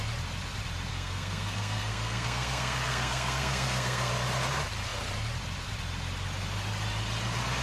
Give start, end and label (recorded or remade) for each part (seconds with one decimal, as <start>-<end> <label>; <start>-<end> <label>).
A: 0.0-0.9 recorded; 0.9-4.1 remade; 4.1-7.6 recorded